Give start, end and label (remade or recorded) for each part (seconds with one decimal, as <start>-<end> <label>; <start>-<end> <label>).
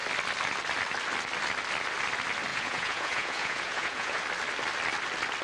0.0-2.5 recorded; 2.5-4.2 remade; 4.2-5.4 recorded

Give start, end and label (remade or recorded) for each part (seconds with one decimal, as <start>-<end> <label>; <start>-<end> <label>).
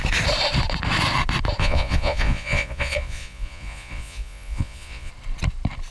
0.0-1.6 recorded; 1.6-5.1 remade; 5.1-5.9 recorded